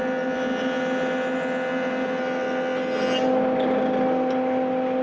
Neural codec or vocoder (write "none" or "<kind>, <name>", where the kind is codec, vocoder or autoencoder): none